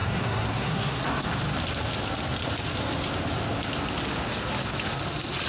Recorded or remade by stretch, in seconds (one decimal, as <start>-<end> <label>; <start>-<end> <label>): 0.0-1.0 remade; 1.0-5.5 recorded